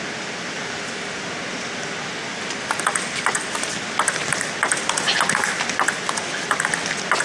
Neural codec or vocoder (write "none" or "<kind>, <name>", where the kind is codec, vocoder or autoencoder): none